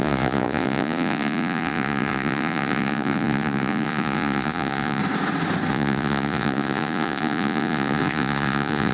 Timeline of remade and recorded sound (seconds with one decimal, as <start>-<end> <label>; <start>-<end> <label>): 0.0-5.0 remade; 5.0-5.7 recorded; 5.7-8.9 remade